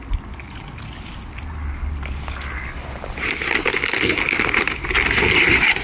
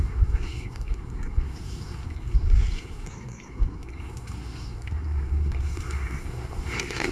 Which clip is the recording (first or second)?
first